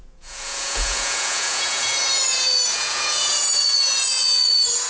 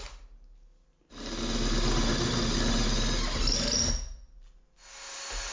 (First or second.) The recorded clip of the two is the second